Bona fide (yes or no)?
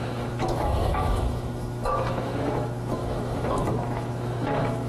no